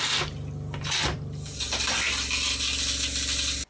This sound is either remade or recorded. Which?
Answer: recorded